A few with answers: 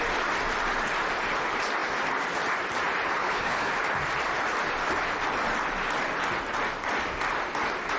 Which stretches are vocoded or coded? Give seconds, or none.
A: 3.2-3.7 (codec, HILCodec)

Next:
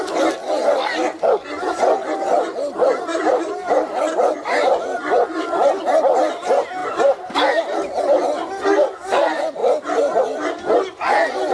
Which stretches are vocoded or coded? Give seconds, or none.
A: 3.1-5.8 (vocoder, BigVGAN v2); 6.8-8.0; 9.6-10.2

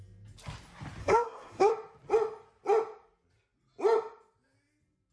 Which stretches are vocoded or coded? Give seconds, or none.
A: 1.0-1.7 (codec, SNAC)